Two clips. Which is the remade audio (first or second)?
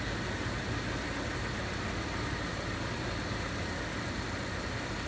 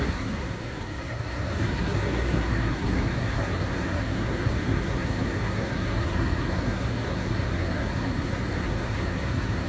second